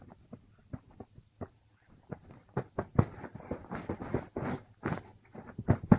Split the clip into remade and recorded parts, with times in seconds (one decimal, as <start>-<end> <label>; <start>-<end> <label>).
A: 0.0-0.6 recorded; 0.6-2.2 remade; 2.2-3.6 recorded; 3.6-4.4 remade; 4.4-6.0 recorded